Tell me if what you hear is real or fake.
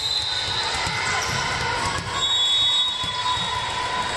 real